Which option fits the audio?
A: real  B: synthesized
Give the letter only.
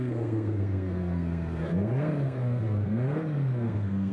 B